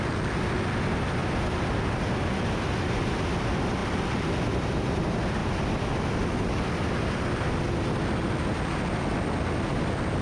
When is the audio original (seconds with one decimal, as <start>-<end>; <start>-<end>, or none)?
0.0-5.4; 6.8-10.2